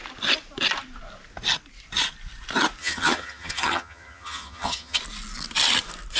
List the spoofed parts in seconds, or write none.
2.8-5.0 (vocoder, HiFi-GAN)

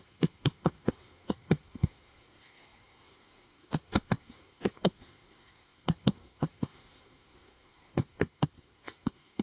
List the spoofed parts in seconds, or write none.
0.0-9.4 (codec, SNAC)

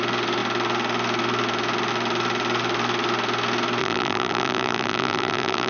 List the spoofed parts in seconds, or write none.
3.8-5.7 (vocoder, BigVGAN v2)

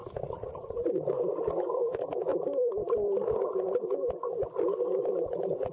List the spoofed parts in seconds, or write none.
none

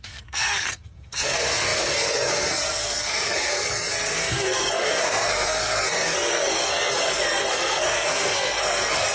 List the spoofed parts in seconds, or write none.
0.0-9.1 (codec, SNAC)

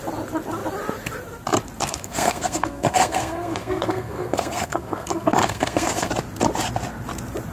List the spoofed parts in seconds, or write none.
1.8-6.1 (codec, SNAC)